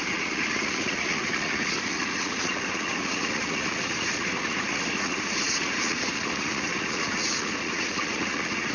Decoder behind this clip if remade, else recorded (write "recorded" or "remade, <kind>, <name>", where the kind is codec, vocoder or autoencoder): remade, vocoder, Vocos